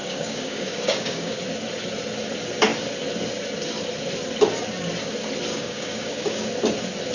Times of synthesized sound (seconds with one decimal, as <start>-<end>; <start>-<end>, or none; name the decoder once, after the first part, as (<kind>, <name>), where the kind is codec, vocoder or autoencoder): 0.0-1.4 (codec, DAC); 5.5-6.5